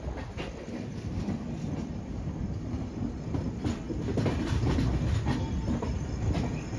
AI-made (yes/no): no